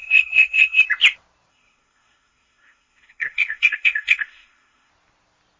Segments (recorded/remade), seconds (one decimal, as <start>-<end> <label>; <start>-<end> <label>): 0.0-0.8 remade; 0.8-1.5 recorded; 1.5-4.9 remade; 4.9-5.6 recorded